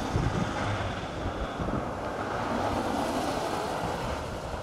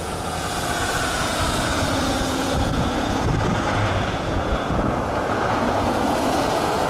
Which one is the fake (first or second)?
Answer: second